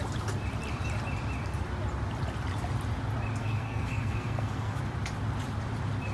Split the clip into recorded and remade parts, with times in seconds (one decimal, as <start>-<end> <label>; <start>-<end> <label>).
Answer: 0.0-3.4 recorded; 3.4-4.8 remade; 4.8-6.1 recorded